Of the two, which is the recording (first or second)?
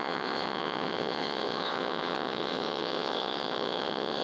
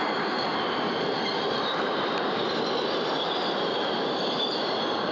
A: second